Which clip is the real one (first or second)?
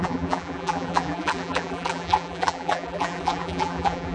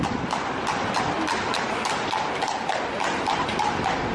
second